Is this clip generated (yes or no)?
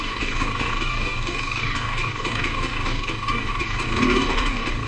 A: yes